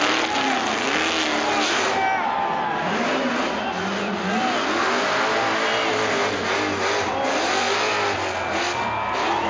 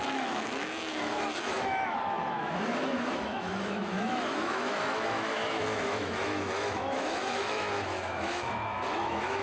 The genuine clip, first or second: first